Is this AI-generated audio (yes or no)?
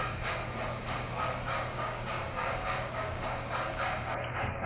yes